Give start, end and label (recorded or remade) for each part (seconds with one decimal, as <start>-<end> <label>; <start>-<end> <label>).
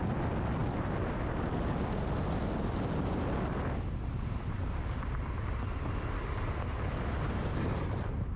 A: 0.0-8.4 recorded